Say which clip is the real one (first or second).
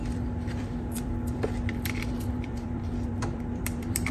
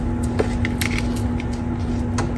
second